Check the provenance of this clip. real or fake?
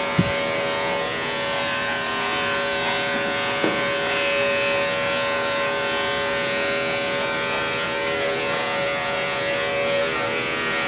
fake